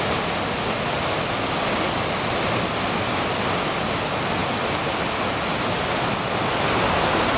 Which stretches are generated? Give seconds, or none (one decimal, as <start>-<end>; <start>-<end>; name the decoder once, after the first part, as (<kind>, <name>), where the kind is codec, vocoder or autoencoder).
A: none